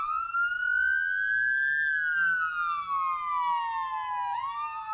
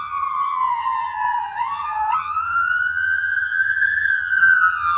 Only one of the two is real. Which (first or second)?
first